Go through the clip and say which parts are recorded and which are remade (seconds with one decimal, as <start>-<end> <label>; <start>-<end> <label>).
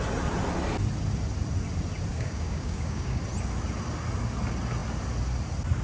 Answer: 0.0-2.1 recorded; 2.1-3.2 remade; 3.2-5.8 recorded